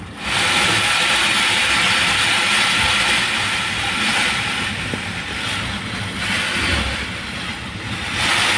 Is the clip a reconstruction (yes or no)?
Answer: no